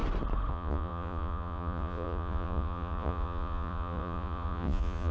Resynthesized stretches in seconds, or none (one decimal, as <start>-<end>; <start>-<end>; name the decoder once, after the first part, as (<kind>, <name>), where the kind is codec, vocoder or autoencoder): 0.5-5.1 (vocoder, Vocos)